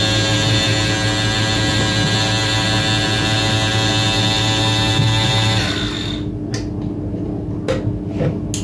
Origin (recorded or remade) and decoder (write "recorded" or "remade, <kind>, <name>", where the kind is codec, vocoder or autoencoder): recorded